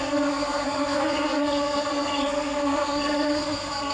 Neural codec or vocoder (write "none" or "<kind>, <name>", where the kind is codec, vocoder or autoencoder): codec, SNAC